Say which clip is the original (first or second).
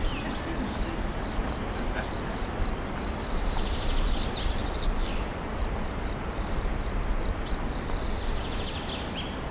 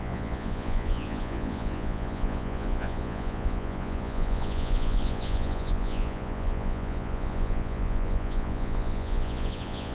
first